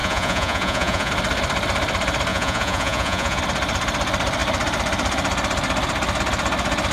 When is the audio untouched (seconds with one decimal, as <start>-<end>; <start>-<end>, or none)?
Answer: 1.1-2.3; 3.4-6.9